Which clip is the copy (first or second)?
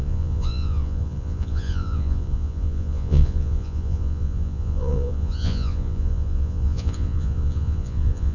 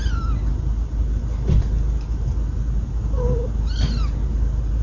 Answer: first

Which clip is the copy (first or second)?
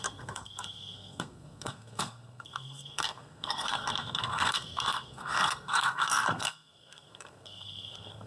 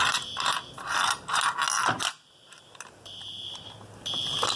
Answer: first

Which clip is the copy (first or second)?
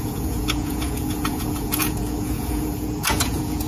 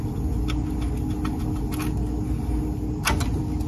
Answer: first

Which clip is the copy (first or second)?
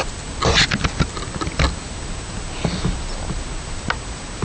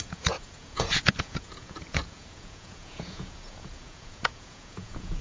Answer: second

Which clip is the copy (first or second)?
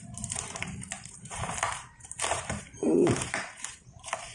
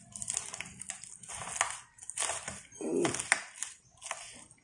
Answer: first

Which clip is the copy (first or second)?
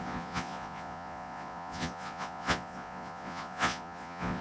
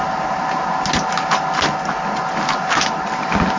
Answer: first